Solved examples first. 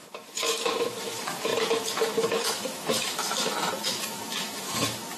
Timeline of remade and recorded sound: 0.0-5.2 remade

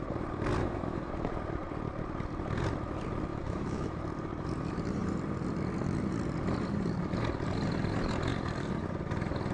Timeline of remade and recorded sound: 0.0-0.6 recorded; 0.6-1.1 remade; 1.1-3.3 recorded; 3.3-4.0 remade; 4.0-9.5 recorded

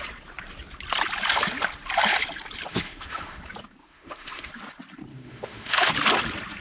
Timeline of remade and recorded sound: 0.0-2.7 recorded; 2.7-3.4 remade; 3.4-3.8 recorded; 3.8-4.5 remade; 4.5-5.1 recorded; 5.1-5.9 remade; 5.9-6.6 recorded

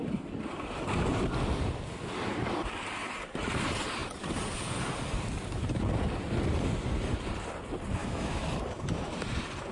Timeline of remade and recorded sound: 0.0-8.0 recorded; 8.0-8.5 remade; 8.5-9.7 recorded

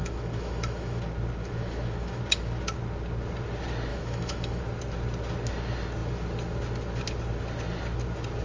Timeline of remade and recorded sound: 0.0-1.0 remade; 1.0-1.4 recorded; 1.4-2.2 remade; 2.2-3.9 recorded; 3.9-4.6 remade; 4.6-8.4 recorded